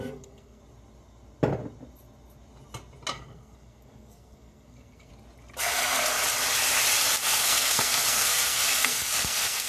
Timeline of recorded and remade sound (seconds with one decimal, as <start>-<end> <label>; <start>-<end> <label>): 0.0-0.6 remade; 0.6-3.1 recorded; 3.1-5.1 remade; 5.1-5.6 recorded; 5.6-6.2 remade; 6.2-7.2 recorded; 7.2-9.7 remade